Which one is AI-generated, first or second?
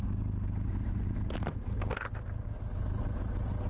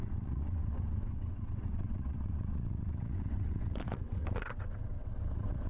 second